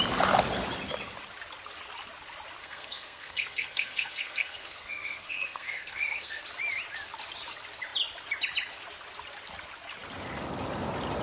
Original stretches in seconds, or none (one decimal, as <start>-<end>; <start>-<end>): 0.0-2.6; 6.4-11.2